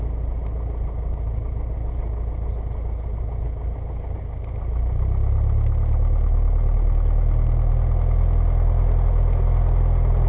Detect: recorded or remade recorded